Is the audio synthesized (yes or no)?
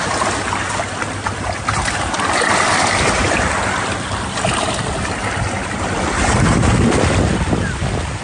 no